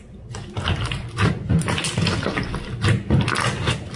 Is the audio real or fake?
real